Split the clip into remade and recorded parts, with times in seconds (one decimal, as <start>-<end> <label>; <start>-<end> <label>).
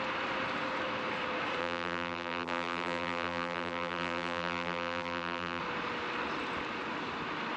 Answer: 0.0-1.6 recorded; 1.6-5.6 remade; 5.6-7.6 recorded